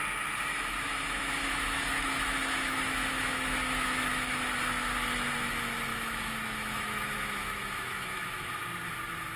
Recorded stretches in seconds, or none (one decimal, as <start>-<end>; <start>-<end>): 0.0-0.5; 4.4-5.9; 8.6-9.4